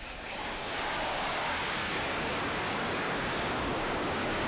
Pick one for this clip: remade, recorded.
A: remade